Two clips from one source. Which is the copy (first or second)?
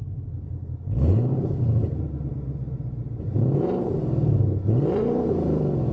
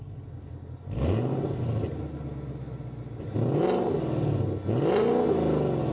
first